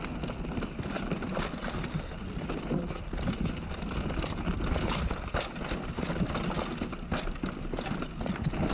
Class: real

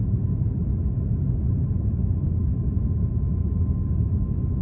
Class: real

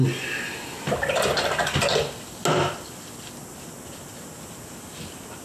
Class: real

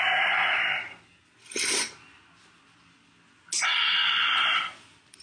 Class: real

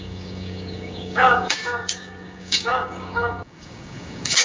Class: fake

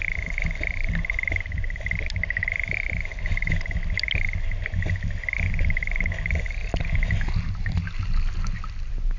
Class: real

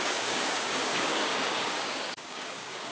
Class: fake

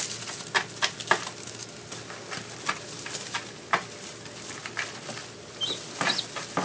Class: real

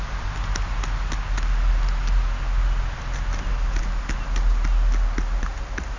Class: real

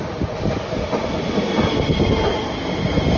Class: real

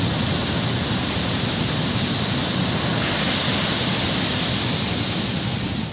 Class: real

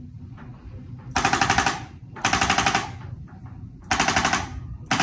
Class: real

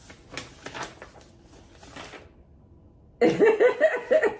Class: real